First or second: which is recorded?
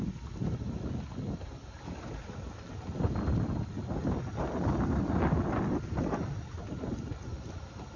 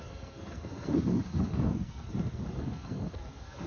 first